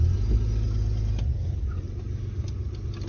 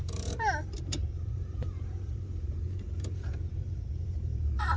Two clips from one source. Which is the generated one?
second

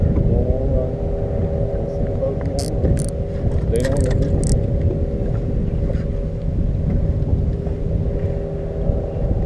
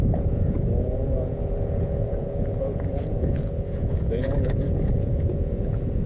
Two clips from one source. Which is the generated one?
second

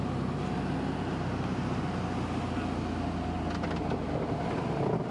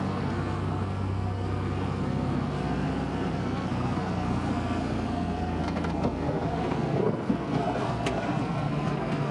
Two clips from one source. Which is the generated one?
second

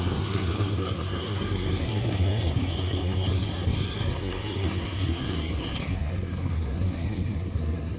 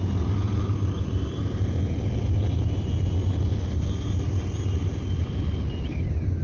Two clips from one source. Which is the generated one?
first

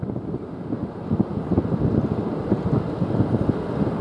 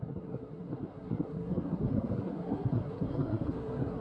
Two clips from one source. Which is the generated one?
second